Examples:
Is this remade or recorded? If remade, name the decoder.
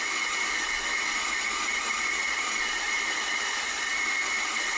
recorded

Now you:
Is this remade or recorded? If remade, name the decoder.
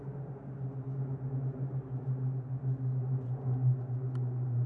recorded